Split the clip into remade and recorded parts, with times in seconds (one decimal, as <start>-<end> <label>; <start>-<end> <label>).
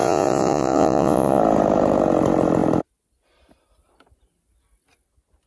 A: 0.0-1.4 remade; 1.4-5.5 recorded